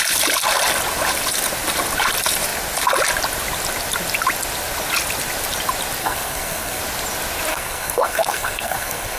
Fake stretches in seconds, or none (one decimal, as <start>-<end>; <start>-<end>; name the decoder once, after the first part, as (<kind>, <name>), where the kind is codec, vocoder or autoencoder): 6.0-6.8 (codec, SNAC); 7.5-9.2